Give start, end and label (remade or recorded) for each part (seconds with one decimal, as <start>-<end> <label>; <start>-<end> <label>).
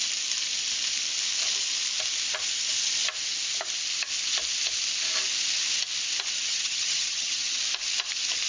0.0-6.5 recorded; 6.5-7.6 remade; 7.6-8.5 recorded